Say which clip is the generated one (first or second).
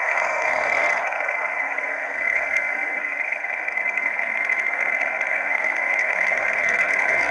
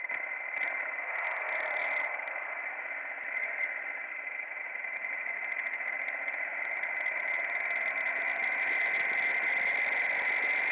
first